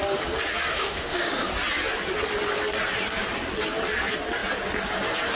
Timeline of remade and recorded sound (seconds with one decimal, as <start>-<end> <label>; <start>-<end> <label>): 0.0-0.7 recorded; 0.7-1.4 remade; 1.4-5.3 recorded